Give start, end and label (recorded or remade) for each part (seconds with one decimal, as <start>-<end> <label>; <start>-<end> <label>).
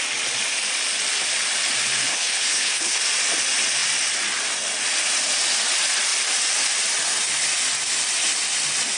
0.0-2.1 recorded; 2.1-3.0 remade; 3.0-9.0 recorded